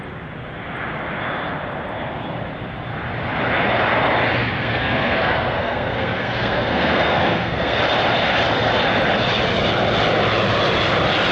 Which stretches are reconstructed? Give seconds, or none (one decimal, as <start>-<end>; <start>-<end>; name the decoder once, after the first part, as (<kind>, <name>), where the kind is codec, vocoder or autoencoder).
4.4-7.8 (codec, SNAC)